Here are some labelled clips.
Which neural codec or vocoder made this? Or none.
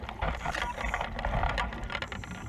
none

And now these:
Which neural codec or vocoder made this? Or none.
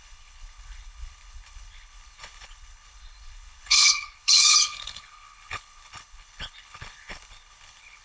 codec, HILCodec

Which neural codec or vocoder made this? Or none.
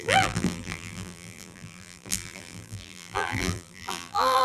vocoder, BigVGAN v2